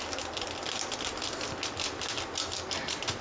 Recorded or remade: recorded